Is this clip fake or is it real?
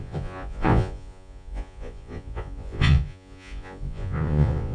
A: fake